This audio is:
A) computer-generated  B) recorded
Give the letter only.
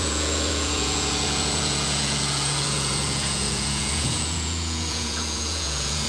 A